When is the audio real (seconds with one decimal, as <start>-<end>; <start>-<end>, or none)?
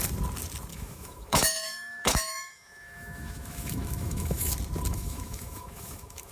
0.0-0.7; 4.5-4.9